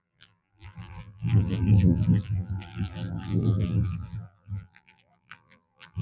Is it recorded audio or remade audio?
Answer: remade